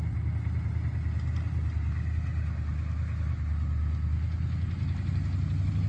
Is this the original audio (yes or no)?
yes